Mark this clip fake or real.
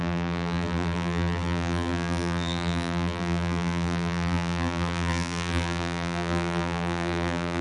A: fake